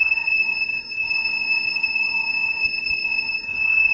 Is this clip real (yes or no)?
no